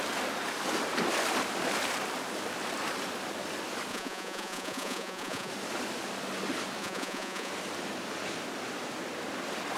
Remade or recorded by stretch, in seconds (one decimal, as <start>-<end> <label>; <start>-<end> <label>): 0.0-3.9 recorded; 3.9-5.5 remade; 5.5-6.8 recorded; 6.8-7.5 remade; 7.5-9.8 recorded